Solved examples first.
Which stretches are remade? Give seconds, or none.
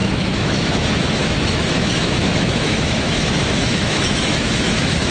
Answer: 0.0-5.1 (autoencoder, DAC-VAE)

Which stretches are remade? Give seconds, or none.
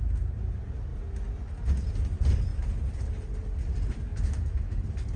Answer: 4.1-4.8 (autoencoder, DAC-VAE)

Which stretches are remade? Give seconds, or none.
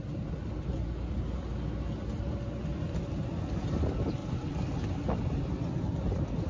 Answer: none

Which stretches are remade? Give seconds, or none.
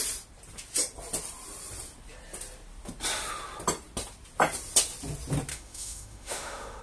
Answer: 5.5-6.8 (autoencoder, DAC-VAE)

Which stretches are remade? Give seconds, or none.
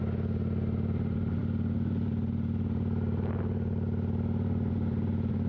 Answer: none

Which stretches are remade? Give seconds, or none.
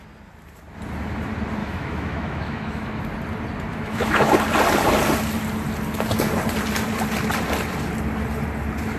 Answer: 1.6-3.0 (autoencoder, DAC-VAE); 3.7-4.3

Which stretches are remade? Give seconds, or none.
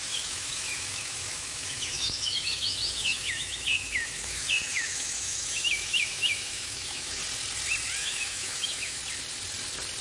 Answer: 0.0-7.2 (autoencoder, DAC-VAE); 8.0-9.0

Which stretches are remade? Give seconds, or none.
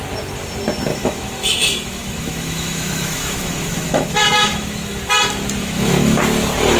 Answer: 0.9-5.0 (autoencoder, DAC-VAE); 5.6-6.2